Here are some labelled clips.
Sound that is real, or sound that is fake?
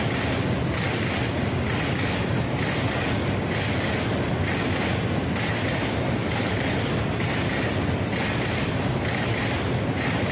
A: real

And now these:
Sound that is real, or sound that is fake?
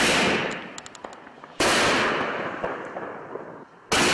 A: real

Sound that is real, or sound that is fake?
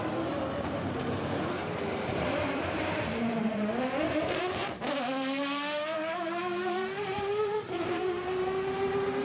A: fake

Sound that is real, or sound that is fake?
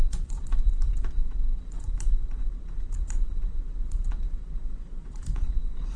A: fake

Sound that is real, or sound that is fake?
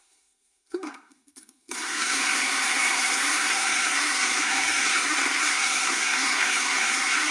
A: fake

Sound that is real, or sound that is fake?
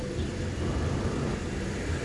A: real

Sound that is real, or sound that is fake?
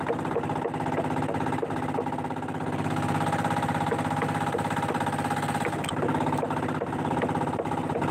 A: real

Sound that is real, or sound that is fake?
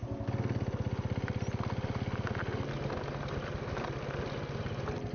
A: real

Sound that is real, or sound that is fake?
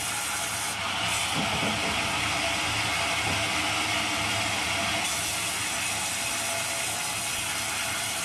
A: real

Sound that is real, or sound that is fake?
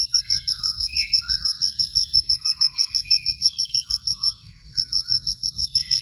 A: fake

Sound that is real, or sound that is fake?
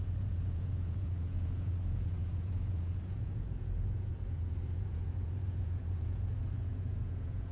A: fake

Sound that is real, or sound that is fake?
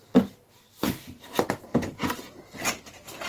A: real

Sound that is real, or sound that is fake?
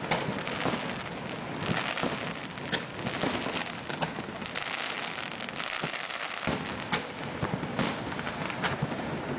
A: real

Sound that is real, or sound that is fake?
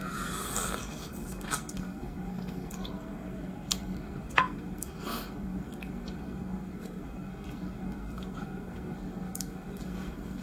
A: fake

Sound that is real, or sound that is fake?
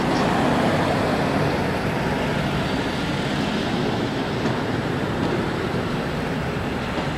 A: real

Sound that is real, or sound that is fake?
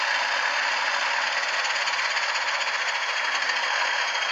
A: real